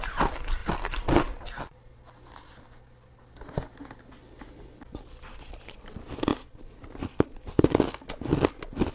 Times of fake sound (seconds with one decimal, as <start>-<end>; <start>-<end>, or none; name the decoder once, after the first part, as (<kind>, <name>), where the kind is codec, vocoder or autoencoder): none